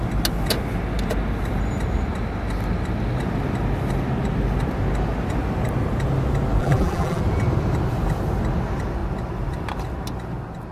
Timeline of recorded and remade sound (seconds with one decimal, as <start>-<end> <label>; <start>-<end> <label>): 0.0-6.6 recorded; 6.6-7.2 remade; 7.2-10.7 recorded